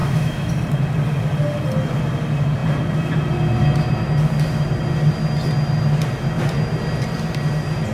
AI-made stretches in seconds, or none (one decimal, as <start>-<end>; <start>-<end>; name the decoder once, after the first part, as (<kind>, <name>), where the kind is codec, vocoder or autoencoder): 0.0-0.5 (autoencoder, DAC-VAE)